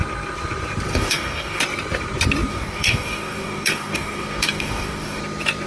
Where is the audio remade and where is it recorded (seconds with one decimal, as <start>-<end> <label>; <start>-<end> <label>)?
0.0-0.9 recorded; 0.9-1.6 remade; 1.6-2.5 recorded; 2.5-5.2 remade; 5.2-5.7 recorded